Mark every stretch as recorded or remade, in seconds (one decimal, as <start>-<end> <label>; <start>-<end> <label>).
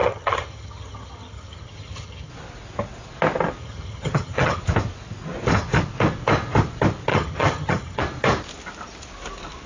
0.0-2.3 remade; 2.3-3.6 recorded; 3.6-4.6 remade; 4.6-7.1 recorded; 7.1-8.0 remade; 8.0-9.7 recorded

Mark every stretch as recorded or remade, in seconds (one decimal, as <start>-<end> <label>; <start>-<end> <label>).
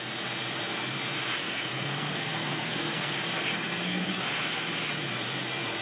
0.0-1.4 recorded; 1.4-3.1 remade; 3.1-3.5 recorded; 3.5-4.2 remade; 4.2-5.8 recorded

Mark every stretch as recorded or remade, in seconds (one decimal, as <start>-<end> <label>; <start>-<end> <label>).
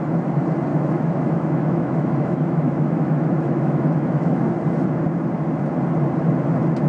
0.0-0.7 recorded; 0.7-4.5 remade; 4.5-6.9 recorded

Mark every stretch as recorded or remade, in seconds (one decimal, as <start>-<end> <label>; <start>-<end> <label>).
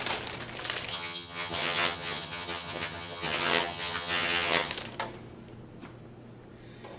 0.0-0.9 recorded; 0.9-4.7 remade; 4.7-7.0 recorded